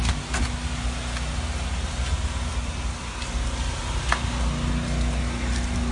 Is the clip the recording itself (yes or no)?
yes